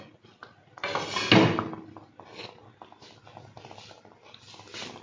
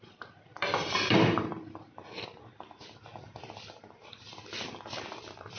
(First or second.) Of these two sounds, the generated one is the second